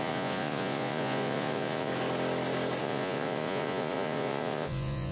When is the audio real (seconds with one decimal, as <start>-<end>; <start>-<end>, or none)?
1.9-2.8